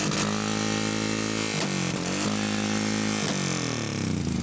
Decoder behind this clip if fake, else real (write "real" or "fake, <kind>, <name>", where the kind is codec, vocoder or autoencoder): real